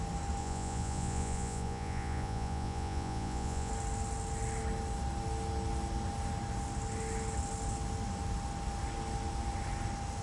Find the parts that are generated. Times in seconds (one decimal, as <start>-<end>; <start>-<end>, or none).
0.4-3.7